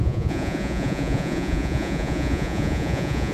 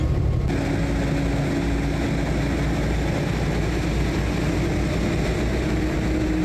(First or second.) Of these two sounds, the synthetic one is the first